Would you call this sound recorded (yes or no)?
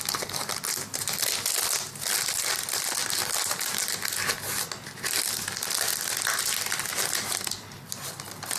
yes